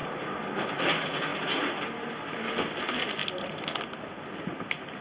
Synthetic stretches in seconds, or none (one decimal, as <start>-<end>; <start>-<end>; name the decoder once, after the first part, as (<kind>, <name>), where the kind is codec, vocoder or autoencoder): none